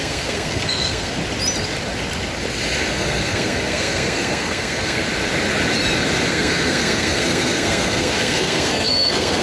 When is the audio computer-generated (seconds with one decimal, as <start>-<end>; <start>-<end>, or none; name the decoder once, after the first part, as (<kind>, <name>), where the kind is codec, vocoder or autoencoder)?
0.0-1.2 (codec, SNAC); 2.9-5.0; 6.3-9.4